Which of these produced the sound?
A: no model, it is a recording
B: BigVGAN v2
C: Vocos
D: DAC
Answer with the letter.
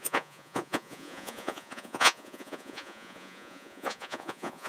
C